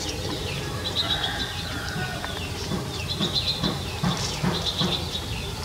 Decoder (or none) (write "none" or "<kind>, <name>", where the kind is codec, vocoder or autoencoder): none